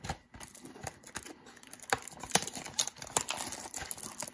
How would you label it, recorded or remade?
recorded